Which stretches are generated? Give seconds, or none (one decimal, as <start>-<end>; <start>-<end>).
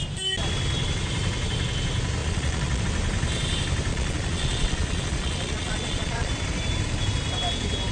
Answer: 2.2-2.8; 3.9-6.3